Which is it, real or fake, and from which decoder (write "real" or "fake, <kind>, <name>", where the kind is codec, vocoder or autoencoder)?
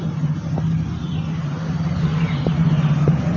real